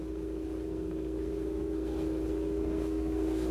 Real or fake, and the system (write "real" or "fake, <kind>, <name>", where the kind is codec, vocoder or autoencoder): fake, codec, SNAC